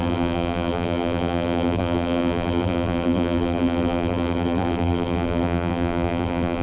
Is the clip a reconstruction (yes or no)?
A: yes